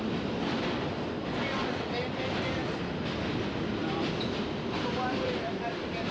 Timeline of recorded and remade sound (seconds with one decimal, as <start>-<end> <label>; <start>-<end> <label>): 0.0-6.1 recorded